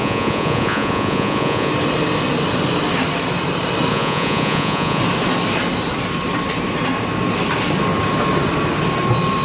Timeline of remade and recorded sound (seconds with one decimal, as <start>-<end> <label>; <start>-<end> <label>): 0.0-1.7 remade; 1.7-3.9 recorded; 3.9-5.0 remade; 5.0-9.4 recorded